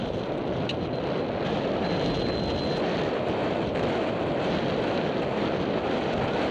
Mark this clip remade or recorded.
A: recorded